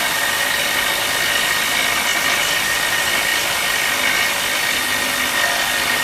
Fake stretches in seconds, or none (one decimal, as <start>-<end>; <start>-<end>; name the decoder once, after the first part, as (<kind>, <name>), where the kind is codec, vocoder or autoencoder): none